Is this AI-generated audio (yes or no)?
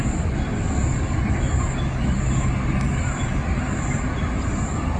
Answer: no